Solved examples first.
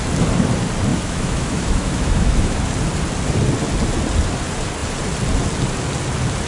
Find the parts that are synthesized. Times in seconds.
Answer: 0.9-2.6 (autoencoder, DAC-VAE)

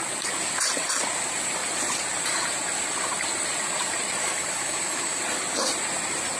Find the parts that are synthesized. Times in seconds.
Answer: 4.2-5.2 (autoencoder, DAC-VAE)

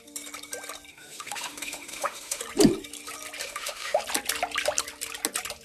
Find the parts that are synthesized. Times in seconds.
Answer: 0.9-2.4 (autoencoder, DAC-VAE); 3.4-4.0

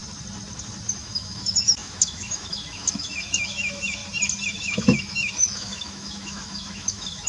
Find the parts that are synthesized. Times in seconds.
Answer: 1.0-4.0 (autoencoder, DAC-VAE); 4.5-7.3

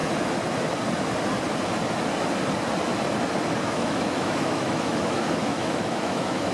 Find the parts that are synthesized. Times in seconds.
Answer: 3.7-6.5 (autoencoder, DAC-VAE)

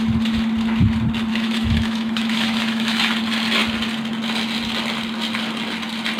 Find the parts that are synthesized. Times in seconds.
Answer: 1.3-3.0 (autoencoder, DAC-VAE)